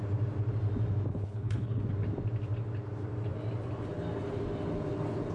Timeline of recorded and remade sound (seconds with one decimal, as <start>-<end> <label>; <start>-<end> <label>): 0.0-1.1 recorded; 1.1-1.8 remade; 1.8-5.3 recorded